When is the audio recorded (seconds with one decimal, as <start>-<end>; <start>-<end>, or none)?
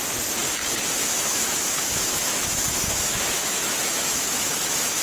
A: 0.0-1.9